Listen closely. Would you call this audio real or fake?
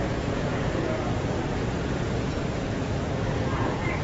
fake